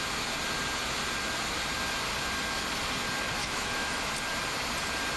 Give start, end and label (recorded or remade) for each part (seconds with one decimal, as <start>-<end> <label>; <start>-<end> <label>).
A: 0.0-3.4 recorded; 3.4-4.1 remade; 4.1-5.2 recorded